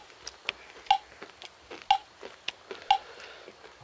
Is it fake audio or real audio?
real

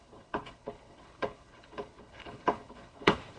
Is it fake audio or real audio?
fake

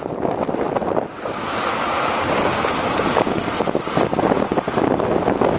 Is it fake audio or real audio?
real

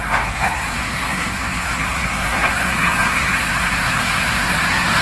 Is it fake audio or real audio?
fake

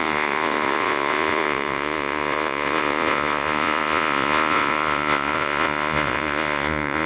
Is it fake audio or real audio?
fake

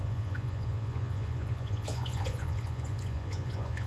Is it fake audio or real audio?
fake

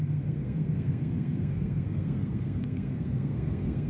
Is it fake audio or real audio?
fake